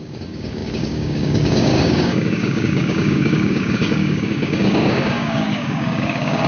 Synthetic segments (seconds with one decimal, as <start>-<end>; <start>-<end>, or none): 0.0-6.5